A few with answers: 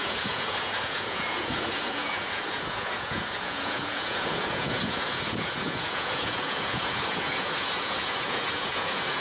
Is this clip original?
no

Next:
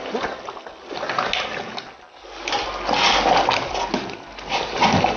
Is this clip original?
yes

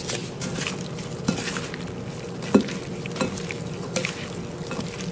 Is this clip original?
yes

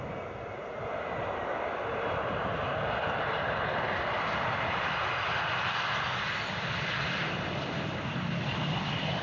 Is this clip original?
yes